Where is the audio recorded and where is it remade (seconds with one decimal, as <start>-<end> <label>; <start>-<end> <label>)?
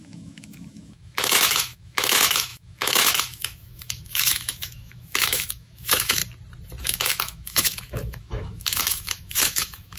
0.0-6.2 remade; 6.2-6.8 recorded; 6.8-10.0 remade